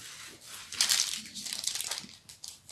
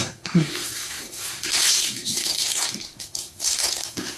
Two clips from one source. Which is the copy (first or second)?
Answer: second